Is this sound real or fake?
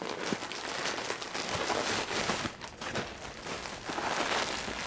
real